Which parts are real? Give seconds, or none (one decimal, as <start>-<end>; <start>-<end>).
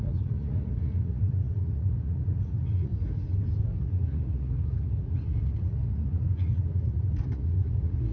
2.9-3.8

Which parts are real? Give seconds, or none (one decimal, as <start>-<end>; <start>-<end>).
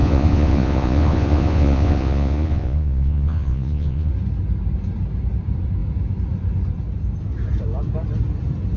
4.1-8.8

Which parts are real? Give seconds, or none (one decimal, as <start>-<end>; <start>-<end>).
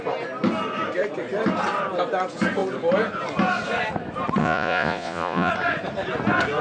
0.0-4.4; 5.5-6.6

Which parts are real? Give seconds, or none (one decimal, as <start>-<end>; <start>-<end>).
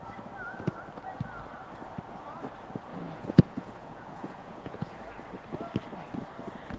0.0-2.9; 4.9-6.8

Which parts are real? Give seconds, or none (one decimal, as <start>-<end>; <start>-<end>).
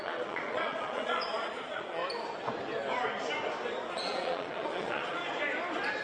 2.0-3.9; 5.2-6.0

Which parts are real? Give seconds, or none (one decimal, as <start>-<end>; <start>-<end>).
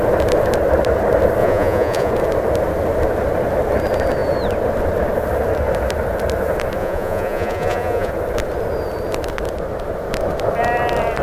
0.0-1.4; 2.1-6.8; 8.1-11.2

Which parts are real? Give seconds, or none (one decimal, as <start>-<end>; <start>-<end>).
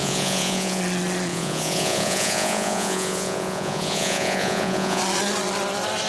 0.8-1.3; 5.0-6.1